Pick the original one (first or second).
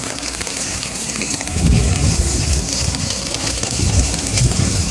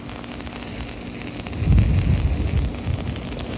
second